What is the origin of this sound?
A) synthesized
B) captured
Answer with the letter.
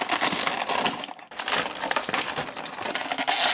B